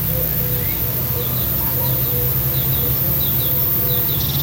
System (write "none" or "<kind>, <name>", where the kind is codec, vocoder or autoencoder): none